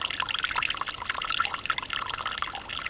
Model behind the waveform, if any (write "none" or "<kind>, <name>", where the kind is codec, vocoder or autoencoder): none